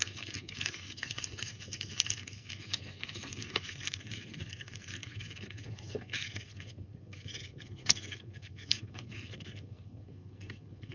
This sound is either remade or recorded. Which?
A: remade